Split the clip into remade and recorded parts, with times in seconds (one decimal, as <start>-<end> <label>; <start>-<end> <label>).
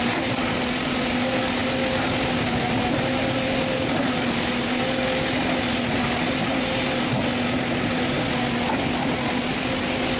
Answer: 0.0-10.2 recorded